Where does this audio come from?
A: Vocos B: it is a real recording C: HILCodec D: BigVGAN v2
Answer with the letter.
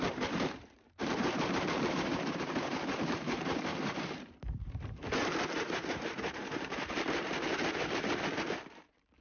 D